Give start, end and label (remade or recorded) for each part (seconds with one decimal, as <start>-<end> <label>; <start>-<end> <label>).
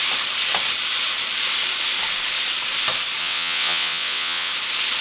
0.0-3.2 recorded; 3.2-4.5 remade; 4.5-5.0 recorded